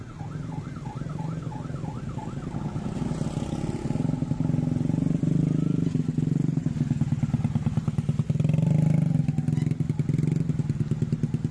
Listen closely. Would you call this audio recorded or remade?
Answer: recorded